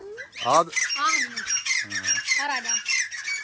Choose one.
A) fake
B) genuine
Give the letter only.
B